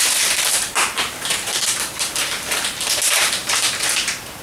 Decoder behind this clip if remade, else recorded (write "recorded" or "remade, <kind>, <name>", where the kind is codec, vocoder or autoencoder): remade, vocoder, BigVGAN v2